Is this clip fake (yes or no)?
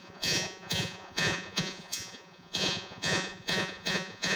yes